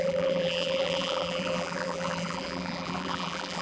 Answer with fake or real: fake